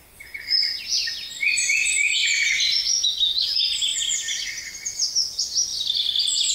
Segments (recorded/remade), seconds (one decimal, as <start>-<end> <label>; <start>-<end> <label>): 0.0-6.5 recorded